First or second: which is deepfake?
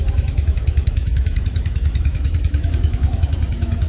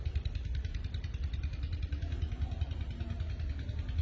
first